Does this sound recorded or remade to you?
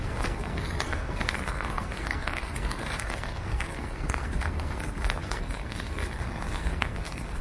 remade